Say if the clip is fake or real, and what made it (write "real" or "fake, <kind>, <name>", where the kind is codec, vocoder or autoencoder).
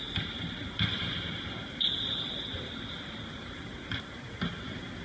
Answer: fake, vocoder, BigVGAN v2